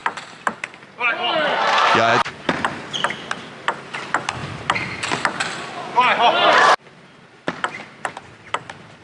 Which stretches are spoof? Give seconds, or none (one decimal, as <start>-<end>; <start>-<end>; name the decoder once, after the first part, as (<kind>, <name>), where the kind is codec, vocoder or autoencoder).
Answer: none